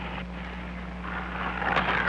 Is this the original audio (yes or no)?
yes